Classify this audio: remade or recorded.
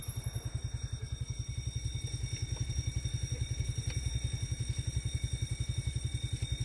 recorded